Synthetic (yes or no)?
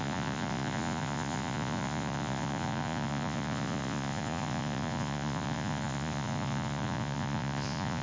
yes